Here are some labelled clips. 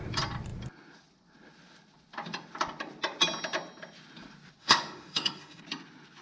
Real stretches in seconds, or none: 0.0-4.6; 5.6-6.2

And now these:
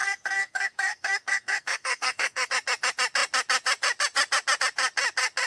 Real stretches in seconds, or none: 2.5-5.5

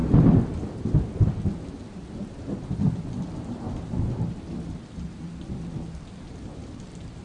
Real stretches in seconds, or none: 0.0-1.7

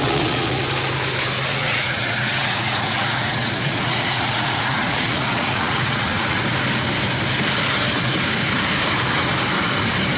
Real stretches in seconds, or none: 0.6-1.5; 6.4-10.2